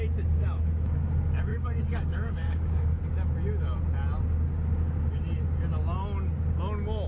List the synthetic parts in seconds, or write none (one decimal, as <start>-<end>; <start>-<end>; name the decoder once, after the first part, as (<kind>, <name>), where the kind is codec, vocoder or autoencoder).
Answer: 1.5-3.0 (codec, DAC)